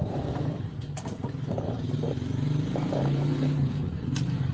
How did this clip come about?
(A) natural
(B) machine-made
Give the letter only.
B